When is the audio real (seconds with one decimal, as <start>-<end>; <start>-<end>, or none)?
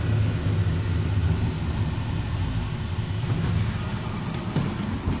0.0-5.2